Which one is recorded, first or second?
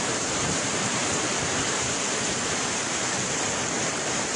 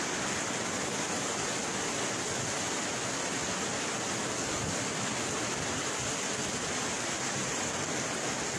second